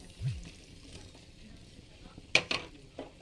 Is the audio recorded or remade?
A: recorded